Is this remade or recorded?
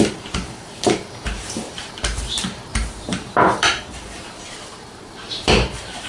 remade